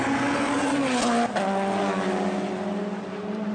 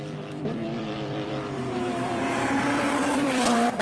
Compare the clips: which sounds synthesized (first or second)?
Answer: second